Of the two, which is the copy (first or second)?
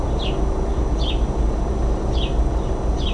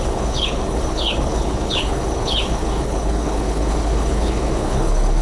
second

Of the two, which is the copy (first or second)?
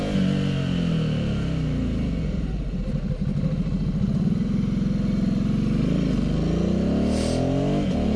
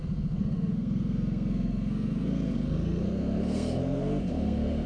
second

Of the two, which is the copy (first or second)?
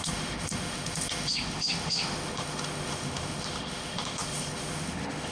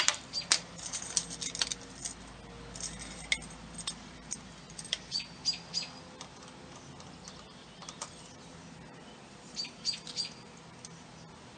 first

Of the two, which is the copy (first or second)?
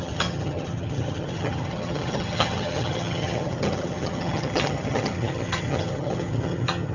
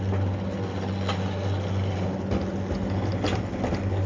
first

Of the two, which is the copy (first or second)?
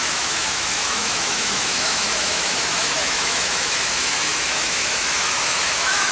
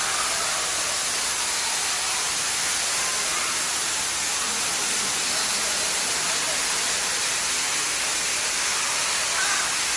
first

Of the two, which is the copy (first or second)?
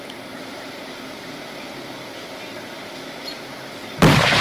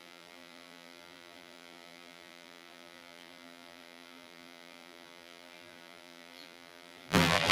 second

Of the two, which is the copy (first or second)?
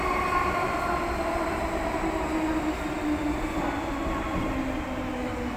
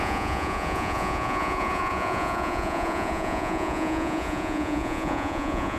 second